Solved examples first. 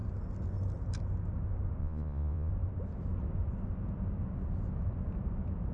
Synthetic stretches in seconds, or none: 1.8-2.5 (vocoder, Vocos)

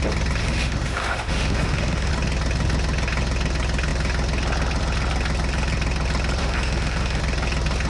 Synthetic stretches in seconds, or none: 0.4-2.1 (autoencoder, DAC-VAE); 6.4-7.2

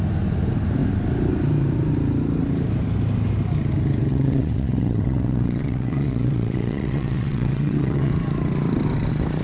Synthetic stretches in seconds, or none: 4.1-8.1 (vocoder, WaveNeXt)